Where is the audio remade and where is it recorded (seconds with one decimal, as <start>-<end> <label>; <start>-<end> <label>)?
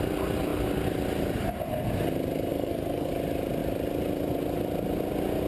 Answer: 0.0-2.5 recorded; 2.5-3.1 remade; 3.1-5.5 recorded